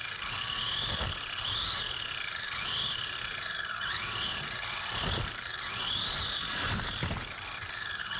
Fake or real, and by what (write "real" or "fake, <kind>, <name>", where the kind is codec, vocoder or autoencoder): real